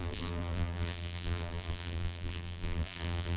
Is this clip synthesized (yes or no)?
yes